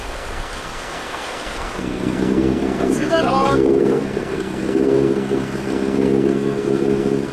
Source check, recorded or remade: remade